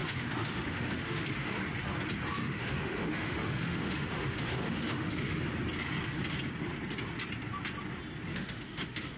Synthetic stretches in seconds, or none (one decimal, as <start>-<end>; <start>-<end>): 0.0-1.6; 2.4-5.4; 8.3-9.2